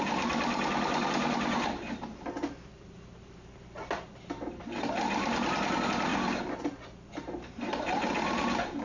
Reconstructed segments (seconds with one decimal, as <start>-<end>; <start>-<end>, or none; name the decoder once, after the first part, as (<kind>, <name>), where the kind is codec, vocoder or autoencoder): none